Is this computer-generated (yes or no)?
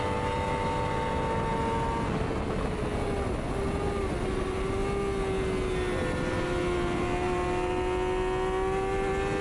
no